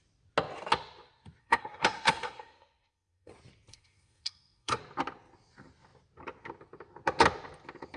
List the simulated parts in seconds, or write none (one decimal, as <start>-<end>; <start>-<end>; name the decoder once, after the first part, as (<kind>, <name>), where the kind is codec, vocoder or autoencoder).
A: 1.4-3.3 (codec, SNAC); 3.7-4.8